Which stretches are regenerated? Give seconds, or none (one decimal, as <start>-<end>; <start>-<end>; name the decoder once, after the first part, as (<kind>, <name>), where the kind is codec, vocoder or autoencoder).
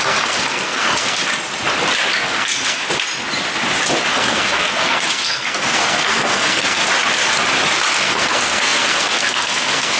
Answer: 0.0-1.2 (codec, SNAC); 2.3-2.8; 4.1-6.8; 7.9-10.0